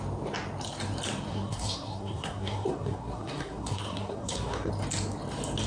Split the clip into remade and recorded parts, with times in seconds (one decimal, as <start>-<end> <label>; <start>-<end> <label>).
0.0-1.3 recorded; 1.3-4.7 remade; 4.7-5.7 recorded